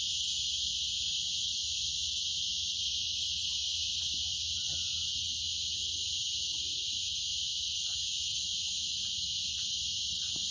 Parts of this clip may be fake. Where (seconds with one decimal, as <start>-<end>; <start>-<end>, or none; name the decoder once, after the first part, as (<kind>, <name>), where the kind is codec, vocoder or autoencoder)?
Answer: none